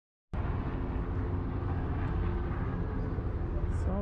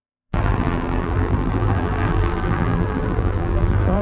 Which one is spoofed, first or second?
second